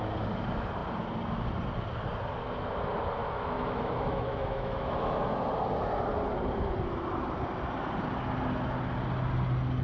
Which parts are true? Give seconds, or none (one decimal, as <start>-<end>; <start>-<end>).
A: 0.0-3.2; 5.2-9.8